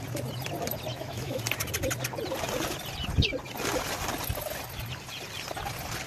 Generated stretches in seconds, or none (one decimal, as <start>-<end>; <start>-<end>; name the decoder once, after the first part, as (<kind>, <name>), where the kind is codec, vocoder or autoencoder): 0.9-1.4 (autoencoder, DAC-VAE)